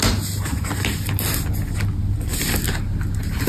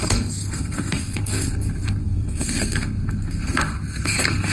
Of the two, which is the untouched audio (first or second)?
first